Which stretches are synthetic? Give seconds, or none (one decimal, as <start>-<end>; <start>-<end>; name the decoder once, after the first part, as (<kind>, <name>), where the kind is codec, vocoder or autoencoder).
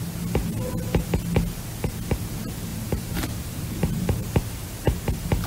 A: 2.7-4.6 (vocoder, BigVGAN v2)